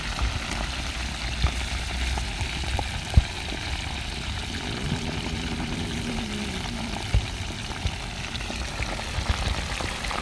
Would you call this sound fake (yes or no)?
yes